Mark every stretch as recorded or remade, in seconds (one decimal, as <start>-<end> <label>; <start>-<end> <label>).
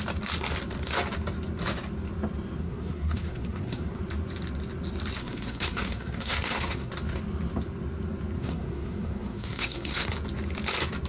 0.0-2.6 recorded; 2.6-4.0 remade; 4.0-5.2 recorded; 5.2-6.9 remade; 6.9-8.4 recorded; 8.4-10.1 remade; 10.1-11.1 recorded